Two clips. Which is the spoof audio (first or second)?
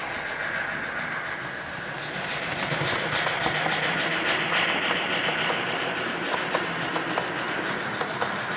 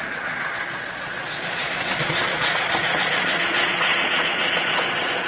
second